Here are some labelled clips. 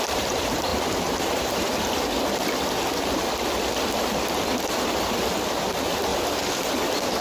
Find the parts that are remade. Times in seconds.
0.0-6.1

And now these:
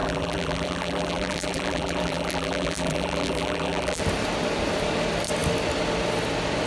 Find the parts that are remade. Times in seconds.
0.0-4.0

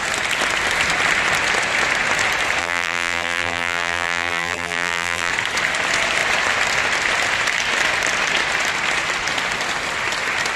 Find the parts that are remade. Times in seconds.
2.6-5.3

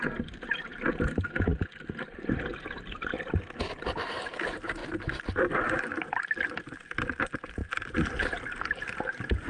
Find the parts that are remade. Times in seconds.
1.5-2.5; 4.8-6.6

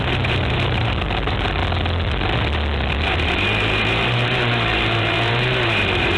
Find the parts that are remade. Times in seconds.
0.0-1.6; 2.9-6.2

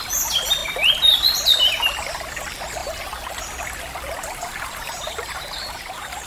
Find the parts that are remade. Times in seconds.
2.8-3.4; 4.4-6.3

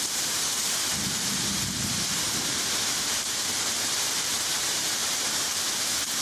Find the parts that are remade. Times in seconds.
0.0-5.5

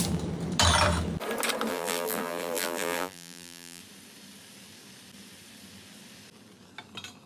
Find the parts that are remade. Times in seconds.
1.7-3.8